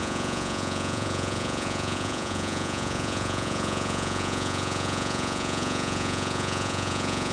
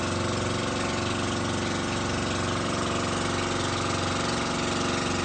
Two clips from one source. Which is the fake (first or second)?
first